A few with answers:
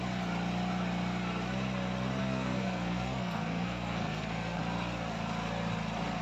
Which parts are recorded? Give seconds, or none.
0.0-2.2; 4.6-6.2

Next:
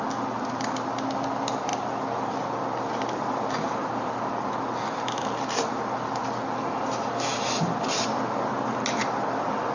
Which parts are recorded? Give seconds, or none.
0.0-9.7

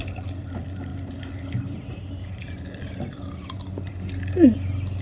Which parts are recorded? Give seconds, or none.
0.0-5.0